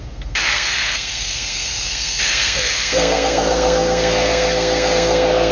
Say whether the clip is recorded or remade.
remade